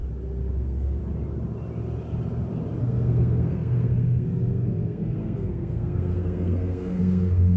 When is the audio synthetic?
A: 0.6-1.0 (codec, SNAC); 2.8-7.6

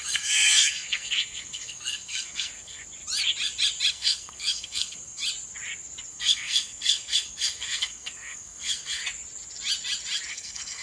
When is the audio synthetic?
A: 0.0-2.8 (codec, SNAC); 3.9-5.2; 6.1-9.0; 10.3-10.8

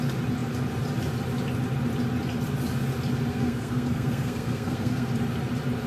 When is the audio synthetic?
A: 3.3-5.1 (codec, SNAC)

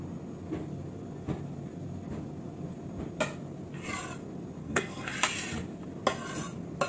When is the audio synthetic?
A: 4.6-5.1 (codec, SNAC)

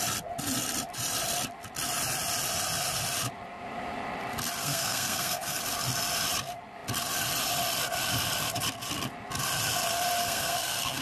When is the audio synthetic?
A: 4.6-5.6 (codec, SNAC); 10.2-11.0

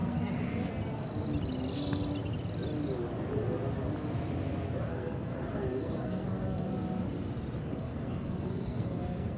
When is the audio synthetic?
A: 0.0-0.7 (codec, SNAC); 4.9-6.7; 7.6-9.4

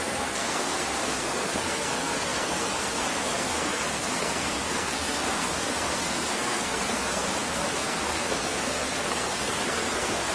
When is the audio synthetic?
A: 0.0-10.3 (codec, SNAC)

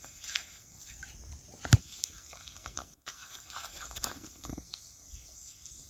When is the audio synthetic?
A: 0.0-1.0 (codec, SNAC); 1.8-5.9